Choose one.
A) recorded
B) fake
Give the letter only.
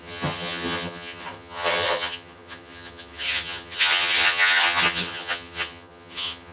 B